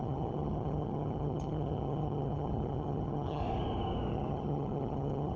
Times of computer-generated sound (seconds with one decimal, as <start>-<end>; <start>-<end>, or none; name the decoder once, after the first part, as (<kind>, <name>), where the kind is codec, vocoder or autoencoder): 0.0-3.4 (vocoder, HiFi-GAN); 4.1-5.4